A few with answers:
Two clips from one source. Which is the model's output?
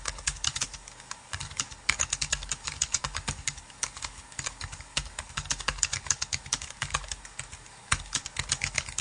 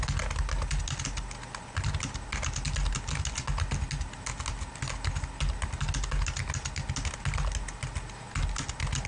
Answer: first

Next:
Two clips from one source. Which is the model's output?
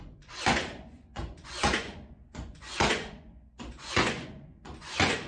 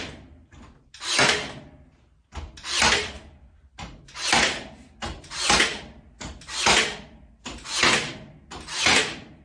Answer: first